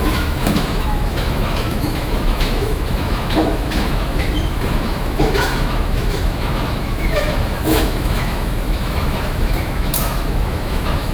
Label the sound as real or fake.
fake